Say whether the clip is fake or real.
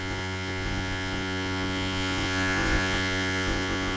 fake